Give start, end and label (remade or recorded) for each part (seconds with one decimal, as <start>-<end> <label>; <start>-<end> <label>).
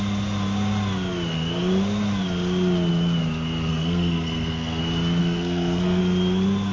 0.0-3.7 recorded; 3.7-4.8 remade; 4.8-5.2 recorded; 5.2-6.0 remade; 6.0-6.7 recorded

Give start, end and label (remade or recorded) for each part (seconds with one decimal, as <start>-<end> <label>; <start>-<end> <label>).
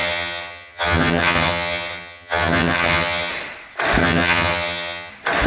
0.0-3.3 remade; 3.3-4.0 recorded; 4.0-5.1 remade; 5.1-5.5 recorded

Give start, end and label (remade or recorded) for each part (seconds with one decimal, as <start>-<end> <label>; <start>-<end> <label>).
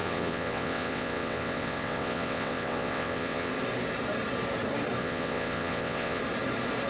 0.0-3.5 remade; 3.5-5.0 recorded; 5.0-6.2 remade; 6.2-6.9 recorded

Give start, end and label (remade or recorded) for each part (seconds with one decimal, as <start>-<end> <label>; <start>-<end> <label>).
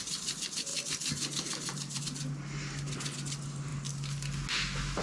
0.0-0.7 recorded; 0.7-2.0 remade; 2.0-5.0 recorded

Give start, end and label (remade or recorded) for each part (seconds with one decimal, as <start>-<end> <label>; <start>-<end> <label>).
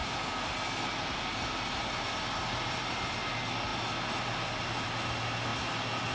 0.0-6.1 recorded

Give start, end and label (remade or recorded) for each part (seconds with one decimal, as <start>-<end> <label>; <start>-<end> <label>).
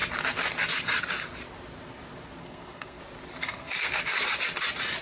0.0-2.4 recorded; 2.4-3.0 remade; 3.0-3.4 recorded; 3.4-4.0 remade; 4.0-5.0 recorded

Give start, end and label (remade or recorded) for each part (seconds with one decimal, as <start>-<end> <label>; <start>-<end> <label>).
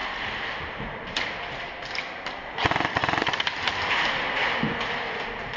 0.0-5.6 recorded